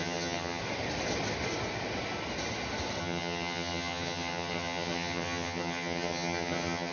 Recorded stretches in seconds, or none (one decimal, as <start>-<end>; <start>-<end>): 0.6-3.0